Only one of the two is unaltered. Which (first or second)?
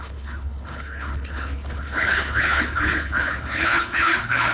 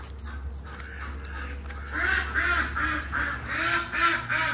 second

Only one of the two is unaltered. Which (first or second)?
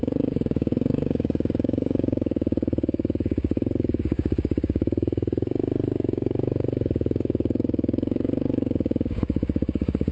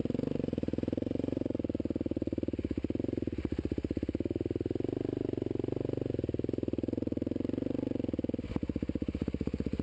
second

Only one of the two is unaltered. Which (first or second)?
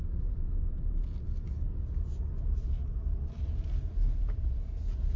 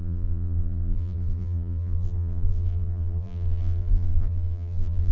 first